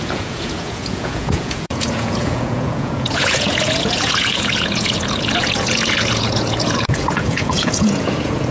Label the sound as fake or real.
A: fake